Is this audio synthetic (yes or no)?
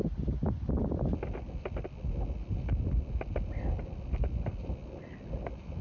no